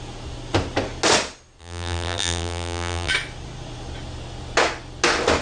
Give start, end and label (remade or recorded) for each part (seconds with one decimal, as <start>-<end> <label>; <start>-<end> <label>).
0.0-1.6 recorded; 1.6-3.1 remade; 3.1-5.4 recorded